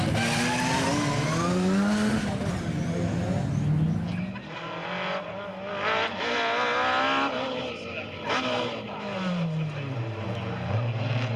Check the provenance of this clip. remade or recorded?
recorded